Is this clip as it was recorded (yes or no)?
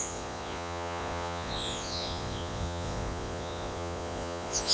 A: no